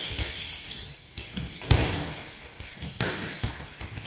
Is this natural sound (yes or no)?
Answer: no